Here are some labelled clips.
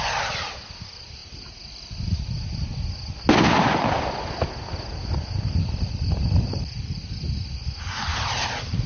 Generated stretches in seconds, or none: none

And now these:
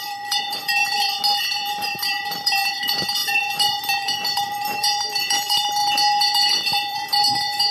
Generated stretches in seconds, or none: 0.0-0.8 (vocoder, BigVGAN v2); 1.4-7.7